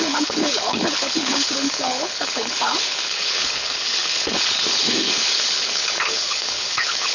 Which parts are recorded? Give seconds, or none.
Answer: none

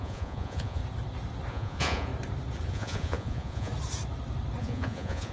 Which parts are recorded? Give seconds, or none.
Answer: 0.8-1.5; 2.1-2.7; 3.7-4.6

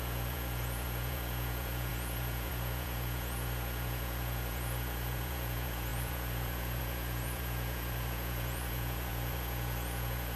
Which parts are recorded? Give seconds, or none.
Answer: none

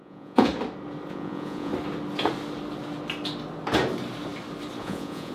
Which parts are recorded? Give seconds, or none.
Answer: 0.5-1.1; 1.7-4.8

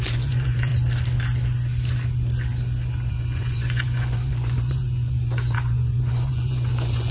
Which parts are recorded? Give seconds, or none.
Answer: 0.7-3.1

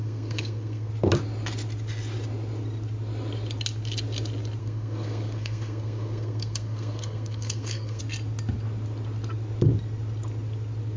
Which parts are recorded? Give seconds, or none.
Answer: 0.9-4.6; 8.0-11.0